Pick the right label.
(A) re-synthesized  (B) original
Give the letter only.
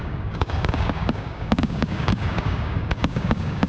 A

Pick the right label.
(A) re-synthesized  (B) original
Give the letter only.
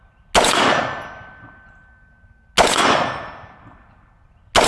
B